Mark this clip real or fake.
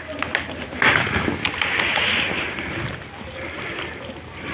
fake